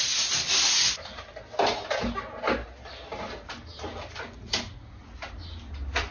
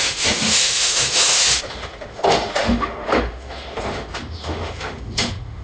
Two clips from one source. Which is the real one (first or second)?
first